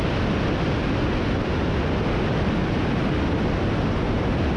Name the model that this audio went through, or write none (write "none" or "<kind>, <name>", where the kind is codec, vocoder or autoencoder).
none